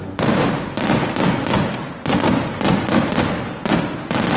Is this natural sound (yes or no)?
yes